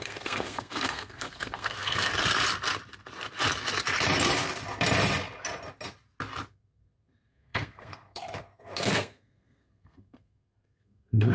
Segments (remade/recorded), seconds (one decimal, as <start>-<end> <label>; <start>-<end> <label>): 0.0-2.1 remade; 2.1-6.5 recorded; 6.5-11.3 remade